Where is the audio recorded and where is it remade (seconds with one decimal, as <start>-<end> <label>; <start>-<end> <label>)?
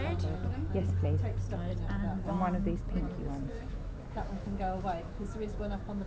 0.0-3.5 recorded; 3.5-6.1 remade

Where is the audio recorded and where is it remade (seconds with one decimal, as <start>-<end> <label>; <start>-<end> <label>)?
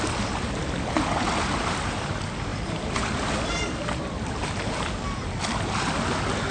0.0-6.5 recorded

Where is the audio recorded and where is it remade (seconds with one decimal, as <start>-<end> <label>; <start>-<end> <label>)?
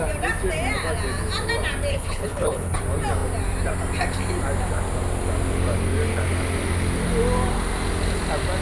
0.0-1.9 recorded; 1.9-2.8 remade; 2.8-8.6 recorded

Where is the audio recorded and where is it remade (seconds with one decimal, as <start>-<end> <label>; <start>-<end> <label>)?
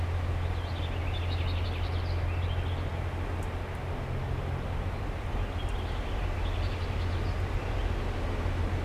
0.0-8.8 recorded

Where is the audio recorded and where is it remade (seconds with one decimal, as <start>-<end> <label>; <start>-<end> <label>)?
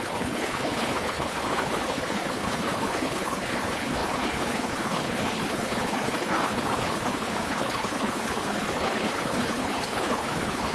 0.0-10.7 remade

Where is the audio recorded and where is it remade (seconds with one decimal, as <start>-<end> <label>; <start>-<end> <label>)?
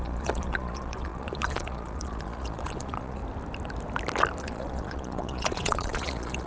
0.0-3.2 remade; 3.2-4.4 recorded; 4.4-6.5 remade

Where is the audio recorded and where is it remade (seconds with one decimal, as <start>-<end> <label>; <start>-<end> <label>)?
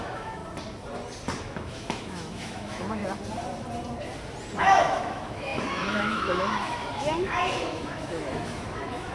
0.0-0.4 remade; 0.4-1.4 recorded; 1.4-3.0 remade; 3.0-4.6 recorded; 4.6-9.1 remade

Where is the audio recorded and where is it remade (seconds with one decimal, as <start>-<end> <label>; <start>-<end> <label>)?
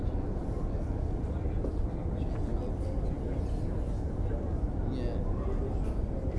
0.0-6.4 recorded